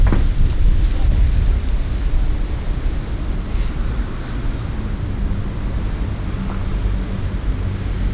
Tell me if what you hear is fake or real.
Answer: real